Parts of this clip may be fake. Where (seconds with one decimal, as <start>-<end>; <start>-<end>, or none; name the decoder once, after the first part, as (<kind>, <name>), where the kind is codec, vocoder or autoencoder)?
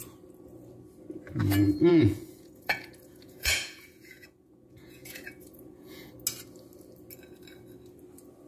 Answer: 1.9-6.1 (vocoder, Vocos)